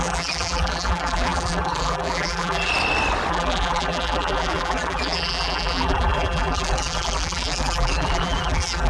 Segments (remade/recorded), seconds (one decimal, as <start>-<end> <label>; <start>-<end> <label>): 0.0-2.7 remade; 2.7-3.3 recorded; 3.3-8.9 remade